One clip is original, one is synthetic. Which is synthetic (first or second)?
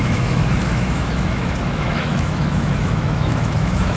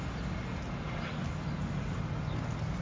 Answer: first